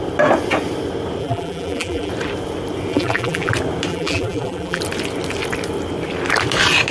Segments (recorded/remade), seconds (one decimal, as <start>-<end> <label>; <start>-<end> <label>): 0.0-1.2 recorded; 1.2-2.1 remade; 2.1-2.9 recorded; 2.9-3.5 remade; 3.5-3.9 recorded; 3.9-4.8 remade; 4.8-6.9 recorded